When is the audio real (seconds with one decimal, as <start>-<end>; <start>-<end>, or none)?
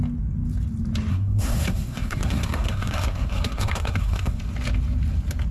0.0-1.1; 4.4-5.5